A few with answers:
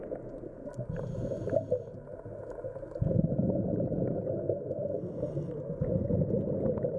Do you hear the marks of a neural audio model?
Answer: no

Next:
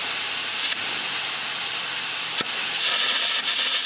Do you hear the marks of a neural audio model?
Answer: no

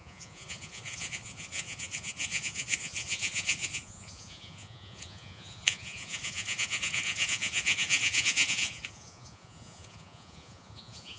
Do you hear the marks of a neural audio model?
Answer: yes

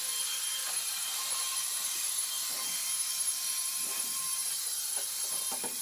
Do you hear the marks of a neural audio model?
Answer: yes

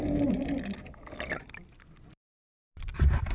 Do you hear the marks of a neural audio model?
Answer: no